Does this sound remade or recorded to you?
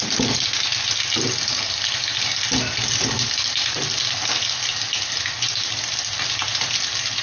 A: recorded